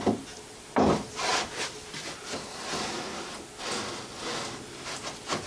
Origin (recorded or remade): recorded